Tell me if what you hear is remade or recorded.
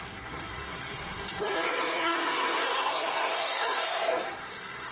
remade